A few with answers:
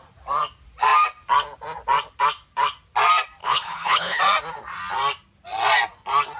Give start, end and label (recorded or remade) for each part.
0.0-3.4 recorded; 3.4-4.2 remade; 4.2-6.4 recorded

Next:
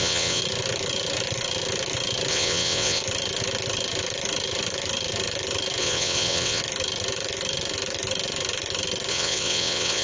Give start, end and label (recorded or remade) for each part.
0.0-0.4 remade; 0.4-2.3 recorded; 2.3-3.0 remade; 3.0-5.8 recorded; 5.8-6.6 remade; 6.6-9.1 recorded; 9.1-10.0 remade

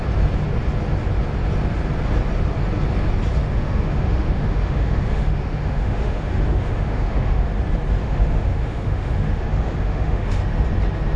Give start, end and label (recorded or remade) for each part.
0.0-3.4 recorded; 3.4-7.5 remade; 7.5-8.0 recorded; 8.0-10.4 remade; 10.4-11.2 recorded

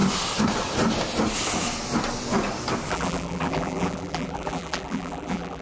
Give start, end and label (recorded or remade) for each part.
0.0-2.9 recorded; 2.9-5.6 remade

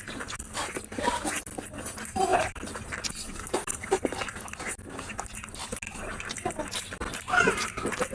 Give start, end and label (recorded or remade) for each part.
0.0-2.3 recorded; 2.3-3.1 remade; 3.1-8.1 recorded

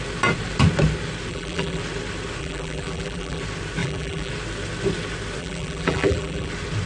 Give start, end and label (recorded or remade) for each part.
0.0-1.3 recorded; 1.3-1.8 remade; 1.8-2.4 recorded; 2.4-3.4 remade; 3.4-3.8 recorded; 3.8-4.3 remade; 4.3-5.4 recorded; 5.4-6.5 remade; 6.5-6.9 recorded

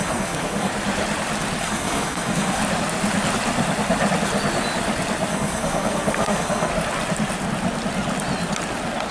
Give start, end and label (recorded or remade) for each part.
0.0-0.7 remade; 0.7-1.6 recorded; 1.6-2.6 remade; 2.6-5.3 recorded; 5.3-6.7 remade; 6.7-9.1 recorded